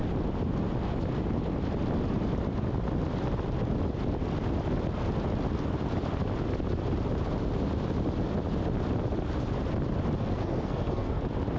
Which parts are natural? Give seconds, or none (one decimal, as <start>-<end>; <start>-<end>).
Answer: 0.0-10.2; 11.2-11.6